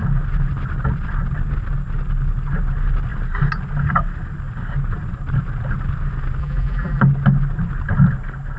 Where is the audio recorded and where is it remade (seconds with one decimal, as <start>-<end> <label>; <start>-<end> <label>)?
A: 0.0-6.4 recorded; 6.4-7.0 remade; 7.0-8.6 recorded

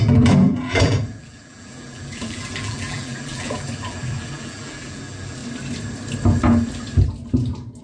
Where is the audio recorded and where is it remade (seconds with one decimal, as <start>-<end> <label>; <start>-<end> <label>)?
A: 0.0-5.4 remade; 5.4-7.8 recorded

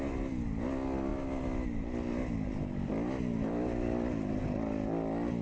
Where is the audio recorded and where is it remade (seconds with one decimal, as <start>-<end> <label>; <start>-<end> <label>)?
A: 0.0-5.4 recorded

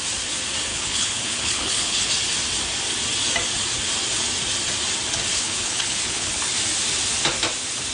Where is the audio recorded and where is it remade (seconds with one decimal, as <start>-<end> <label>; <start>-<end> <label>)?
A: 0.0-0.7 recorded; 0.7-2.1 remade; 2.1-5.3 recorded; 5.3-6.4 remade; 6.4-7.9 recorded